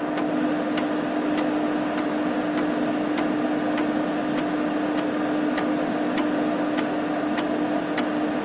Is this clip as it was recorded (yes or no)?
yes